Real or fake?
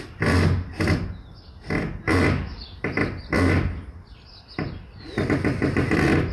real